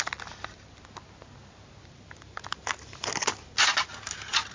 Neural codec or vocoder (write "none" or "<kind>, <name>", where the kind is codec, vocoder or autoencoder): none